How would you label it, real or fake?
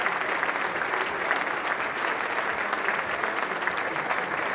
real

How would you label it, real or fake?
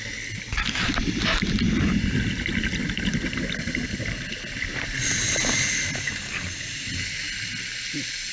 real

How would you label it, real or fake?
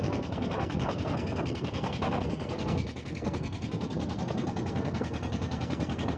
fake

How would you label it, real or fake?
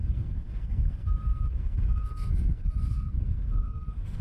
fake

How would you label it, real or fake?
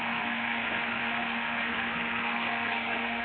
fake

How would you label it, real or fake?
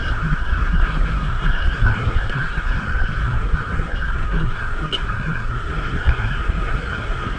fake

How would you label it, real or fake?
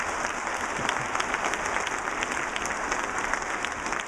real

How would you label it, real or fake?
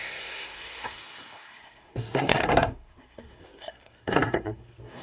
fake